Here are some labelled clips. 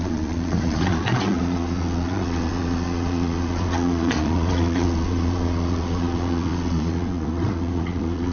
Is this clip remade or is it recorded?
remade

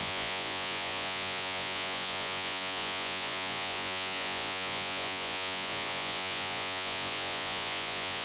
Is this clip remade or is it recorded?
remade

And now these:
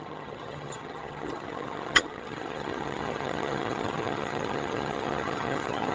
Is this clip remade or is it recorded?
remade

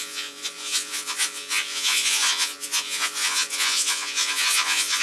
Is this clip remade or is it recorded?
remade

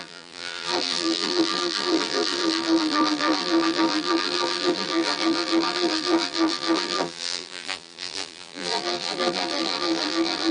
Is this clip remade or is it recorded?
remade